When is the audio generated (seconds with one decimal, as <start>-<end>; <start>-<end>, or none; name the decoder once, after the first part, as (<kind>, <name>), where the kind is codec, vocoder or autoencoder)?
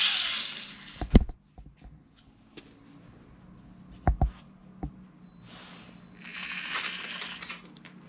none